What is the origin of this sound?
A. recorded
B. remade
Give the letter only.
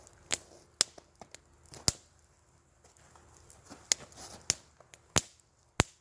A